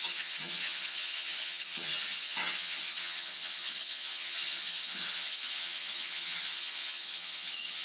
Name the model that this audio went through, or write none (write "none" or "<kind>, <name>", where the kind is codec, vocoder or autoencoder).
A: vocoder, HiFi-GAN